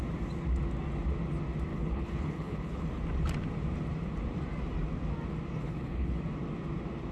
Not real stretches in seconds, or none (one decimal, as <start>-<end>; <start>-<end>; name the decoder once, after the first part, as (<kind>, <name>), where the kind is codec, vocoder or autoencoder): 1.7-3.0 (codec, HILCodec); 5.6-6.2